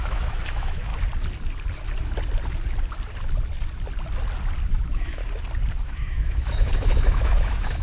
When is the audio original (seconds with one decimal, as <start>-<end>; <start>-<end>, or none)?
0.9-4.7; 5.2-5.8

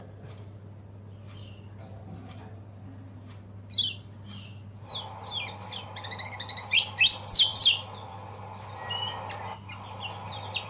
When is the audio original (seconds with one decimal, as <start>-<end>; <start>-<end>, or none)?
0.0-10.7

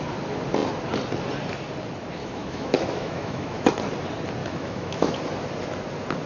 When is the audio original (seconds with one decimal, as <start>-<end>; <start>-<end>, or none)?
0.0-2.2; 3.7-4.4; 5.1-6.3

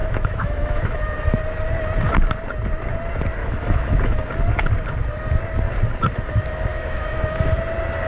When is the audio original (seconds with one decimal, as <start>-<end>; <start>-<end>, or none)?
1.4-3.4; 4.2-6.7; 7.6-8.1

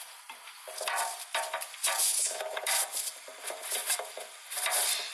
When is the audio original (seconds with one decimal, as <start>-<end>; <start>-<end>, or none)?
0.0-2.1; 2.7-5.1

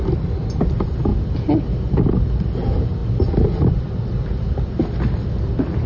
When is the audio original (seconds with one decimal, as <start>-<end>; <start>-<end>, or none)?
0.0-5.9